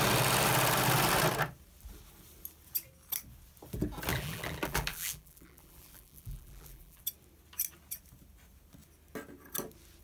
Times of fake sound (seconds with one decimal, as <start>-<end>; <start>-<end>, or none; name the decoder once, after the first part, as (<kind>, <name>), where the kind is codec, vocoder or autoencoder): 4.1-7.0 (vocoder, BigVGAN v2)